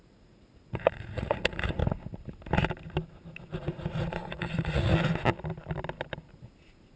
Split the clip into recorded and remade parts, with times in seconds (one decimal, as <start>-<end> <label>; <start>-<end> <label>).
0.0-1.8 remade; 1.8-3.6 recorded; 3.6-4.9 remade; 4.9-6.3 recorded; 6.3-7.0 remade